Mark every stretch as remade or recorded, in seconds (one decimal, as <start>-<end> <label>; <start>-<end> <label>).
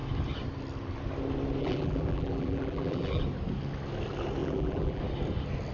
0.0-1.6 recorded; 1.6-3.2 remade; 3.2-4.4 recorded; 4.4-5.0 remade; 5.0-5.7 recorded